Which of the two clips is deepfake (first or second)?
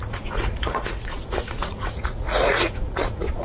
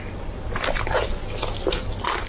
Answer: first